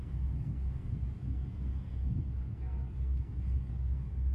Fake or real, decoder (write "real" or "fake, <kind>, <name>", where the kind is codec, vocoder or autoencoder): fake, codec, SNAC